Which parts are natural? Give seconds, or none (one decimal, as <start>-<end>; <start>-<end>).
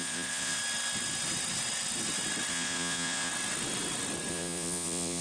0.6-2.5; 3.3-4.3